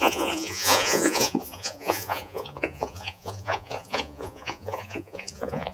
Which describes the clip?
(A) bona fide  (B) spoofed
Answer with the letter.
B